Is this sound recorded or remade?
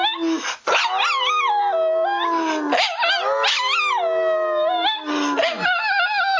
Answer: recorded